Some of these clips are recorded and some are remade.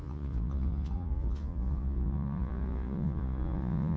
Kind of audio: remade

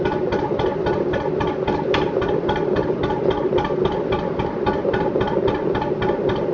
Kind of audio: recorded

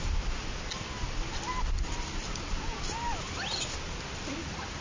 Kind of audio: recorded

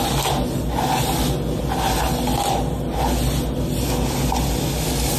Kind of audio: recorded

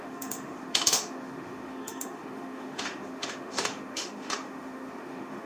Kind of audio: remade